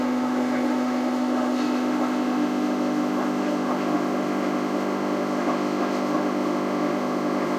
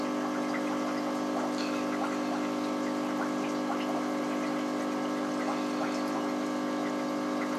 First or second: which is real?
second